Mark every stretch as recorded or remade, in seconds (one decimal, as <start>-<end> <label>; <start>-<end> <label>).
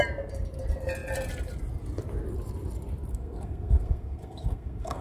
0.0-3.1 recorded; 3.1-5.0 remade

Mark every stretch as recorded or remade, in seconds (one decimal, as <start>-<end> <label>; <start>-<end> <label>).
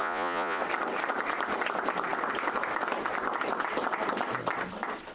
0.0-0.6 remade; 0.6-5.1 recorded